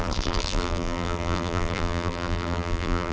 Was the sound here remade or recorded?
remade